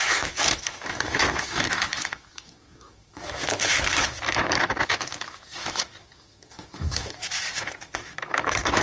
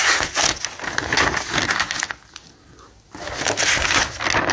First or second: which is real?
second